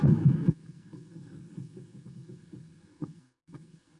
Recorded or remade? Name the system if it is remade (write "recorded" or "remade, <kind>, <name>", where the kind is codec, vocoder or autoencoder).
remade, codec, SNAC